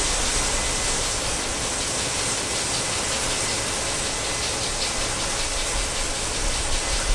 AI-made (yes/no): no